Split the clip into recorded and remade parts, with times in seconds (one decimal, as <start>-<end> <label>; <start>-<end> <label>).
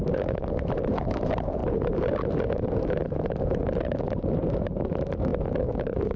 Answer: 0.0-5.3 remade; 5.3-5.8 recorded; 5.8-6.2 remade